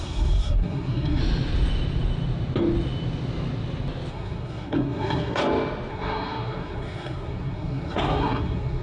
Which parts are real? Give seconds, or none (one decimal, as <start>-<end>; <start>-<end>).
1.2-4.1; 5.4-5.9